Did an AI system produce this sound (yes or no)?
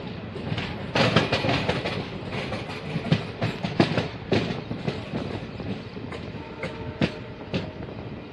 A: no